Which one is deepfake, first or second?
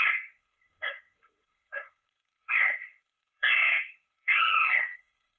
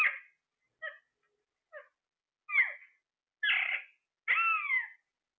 first